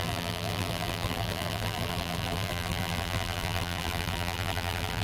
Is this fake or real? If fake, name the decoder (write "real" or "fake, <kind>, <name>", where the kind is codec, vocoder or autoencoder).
fake, vocoder, BigVGAN v2